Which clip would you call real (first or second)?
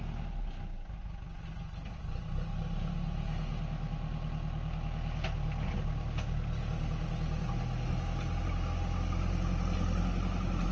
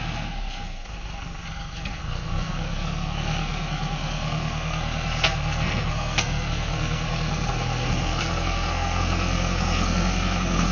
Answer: first